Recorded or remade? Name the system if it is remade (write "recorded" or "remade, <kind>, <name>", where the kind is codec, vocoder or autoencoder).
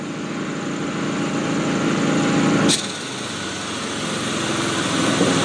recorded